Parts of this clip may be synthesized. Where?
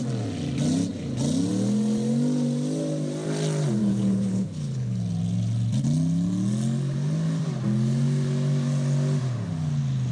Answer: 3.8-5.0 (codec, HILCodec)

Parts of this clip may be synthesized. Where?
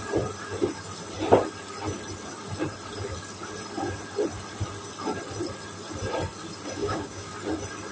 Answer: 6.8-7.3 (codec, DAC)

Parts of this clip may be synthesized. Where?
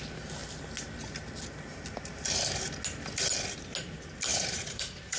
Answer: 4.3-5.2 (vocoder, BigVGAN v2)